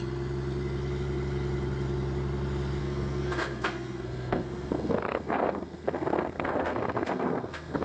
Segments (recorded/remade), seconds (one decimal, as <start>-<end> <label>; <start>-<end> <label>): 0.0-2.8 recorded; 2.8-7.8 remade